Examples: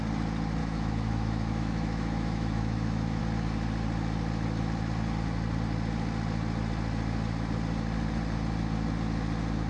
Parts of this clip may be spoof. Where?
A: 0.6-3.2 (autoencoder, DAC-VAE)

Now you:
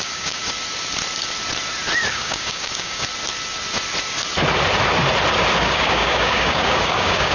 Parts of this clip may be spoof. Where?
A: 0.0-0.4 (codec, DAC); 2.1-3.1; 5.6-7.3

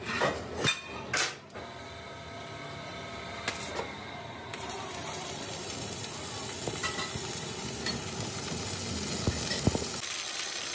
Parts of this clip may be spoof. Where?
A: 4.5-6.2 (vocoder, BigVGAN v2)

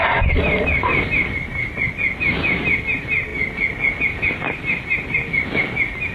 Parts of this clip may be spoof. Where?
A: none

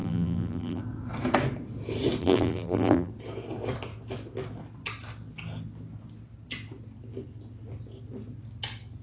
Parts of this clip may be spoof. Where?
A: 0.0-0.8 (vocoder, BigVGAN v2); 2.2-3.1

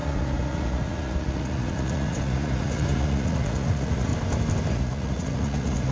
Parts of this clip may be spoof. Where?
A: 0.0-4.1 (vocoder, Vocos); 4.7-5.9